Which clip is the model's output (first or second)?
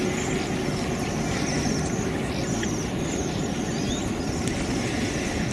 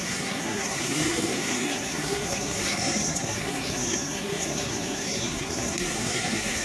second